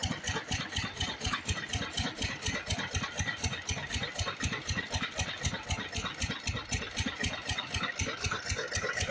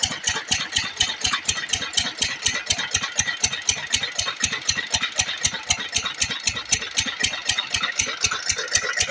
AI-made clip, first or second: first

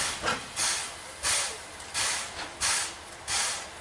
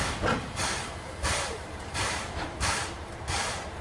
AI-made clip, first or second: second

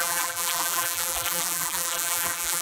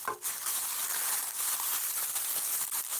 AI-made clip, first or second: first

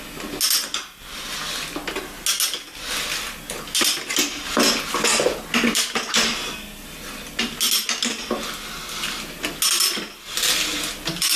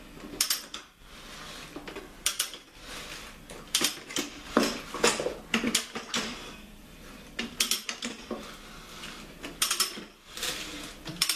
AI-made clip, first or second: second